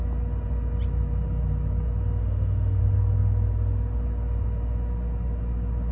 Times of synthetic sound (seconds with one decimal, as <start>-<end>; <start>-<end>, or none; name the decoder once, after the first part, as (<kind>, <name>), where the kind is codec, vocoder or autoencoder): 2.2-2.8 (autoencoder, DAC-VAE)